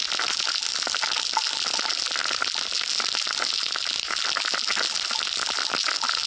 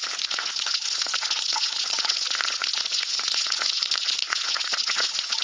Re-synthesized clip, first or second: second